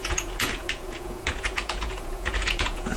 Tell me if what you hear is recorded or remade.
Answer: remade